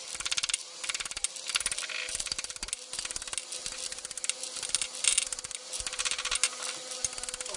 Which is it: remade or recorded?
recorded